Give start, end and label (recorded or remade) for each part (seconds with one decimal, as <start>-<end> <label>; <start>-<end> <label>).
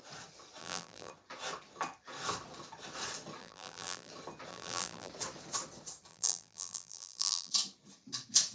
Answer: 0.0-0.6 recorded; 0.6-1.1 remade; 1.1-3.4 recorded; 3.4-4.1 remade; 4.1-4.5 recorded; 4.5-5.1 remade; 5.1-6.1 recorded; 6.1-7.5 remade; 7.5-8.5 recorded